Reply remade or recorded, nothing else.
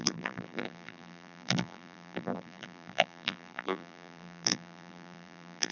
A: remade